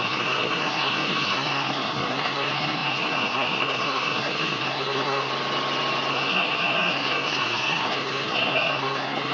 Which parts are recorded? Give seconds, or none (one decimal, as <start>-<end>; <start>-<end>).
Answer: 5.3-6.1